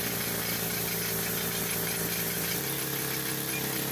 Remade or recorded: recorded